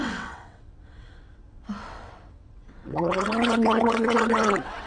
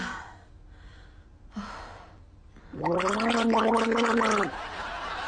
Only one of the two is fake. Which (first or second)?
first